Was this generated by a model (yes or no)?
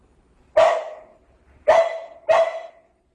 no